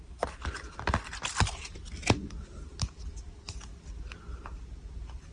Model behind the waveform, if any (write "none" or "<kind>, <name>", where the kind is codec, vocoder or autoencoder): none